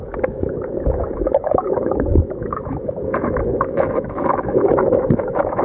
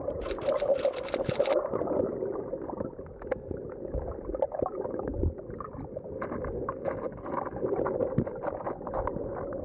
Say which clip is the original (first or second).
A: second